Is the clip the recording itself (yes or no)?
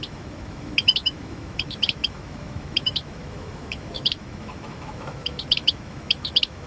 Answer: no